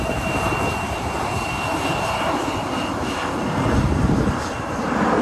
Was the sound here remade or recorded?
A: remade